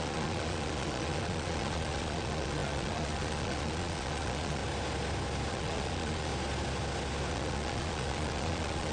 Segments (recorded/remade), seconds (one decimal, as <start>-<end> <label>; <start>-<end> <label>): 0.0-4.6 remade; 4.6-5.5 recorded; 5.5-6.3 remade; 6.3-7.3 recorded; 7.3-8.9 remade

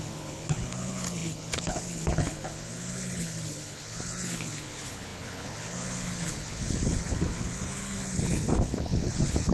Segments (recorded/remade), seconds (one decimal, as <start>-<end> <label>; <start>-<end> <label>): 0.0-9.5 remade

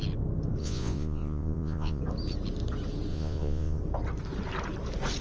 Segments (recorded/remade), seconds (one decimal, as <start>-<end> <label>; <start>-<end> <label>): 0.0-0.6 recorded; 0.6-2.0 remade; 2.0-3.1 recorded; 3.1-3.8 remade; 3.8-5.2 recorded

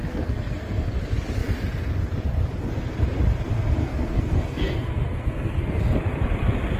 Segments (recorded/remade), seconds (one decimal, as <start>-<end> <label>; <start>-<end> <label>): 0.0-1.0 remade; 1.0-3.8 recorded; 3.8-5.8 remade; 5.8-6.8 recorded

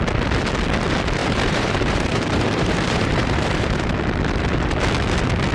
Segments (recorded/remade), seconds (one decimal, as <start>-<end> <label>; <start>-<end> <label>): 0.0-1.2 recorded; 1.2-3.9 remade; 3.9-5.5 recorded

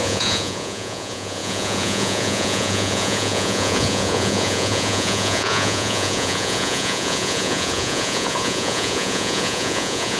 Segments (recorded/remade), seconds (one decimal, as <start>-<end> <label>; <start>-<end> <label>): 0.0-10.2 remade